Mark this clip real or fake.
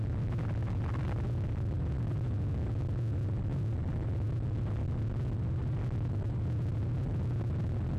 real